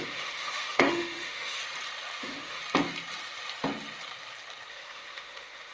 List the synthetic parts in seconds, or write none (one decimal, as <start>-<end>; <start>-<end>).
0.0-1.6; 2.2-2.6; 4.7-5.7